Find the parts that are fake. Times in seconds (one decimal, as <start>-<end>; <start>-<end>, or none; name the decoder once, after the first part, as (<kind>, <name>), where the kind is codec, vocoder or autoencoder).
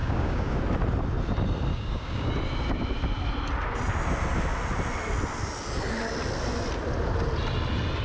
0.0-0.6 (codec, DAC); 1.7-2.3